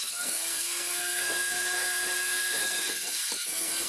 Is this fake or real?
fake